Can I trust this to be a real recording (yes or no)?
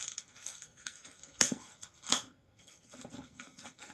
no